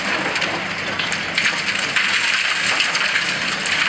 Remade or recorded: recorded